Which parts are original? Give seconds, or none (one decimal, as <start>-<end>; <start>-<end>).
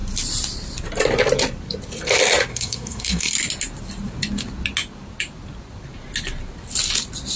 0.0-2.5; 3.3-7.4